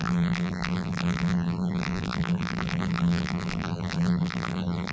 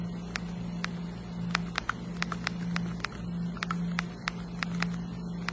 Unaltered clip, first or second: second